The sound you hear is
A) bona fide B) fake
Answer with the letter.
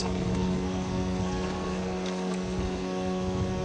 B